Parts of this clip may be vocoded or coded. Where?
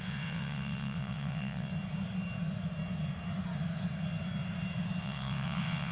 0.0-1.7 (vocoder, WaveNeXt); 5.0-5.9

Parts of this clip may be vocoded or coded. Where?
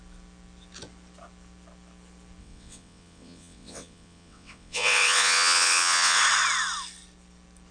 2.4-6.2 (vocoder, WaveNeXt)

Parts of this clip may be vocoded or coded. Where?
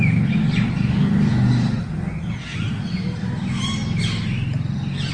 none